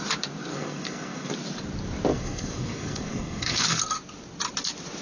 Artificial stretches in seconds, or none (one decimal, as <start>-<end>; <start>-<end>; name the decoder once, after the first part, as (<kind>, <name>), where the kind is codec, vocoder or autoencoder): 0.5-1.3 (codec, SNAC); 2.1-3.8